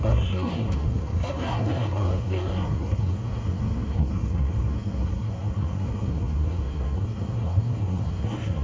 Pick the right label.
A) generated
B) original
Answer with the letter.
A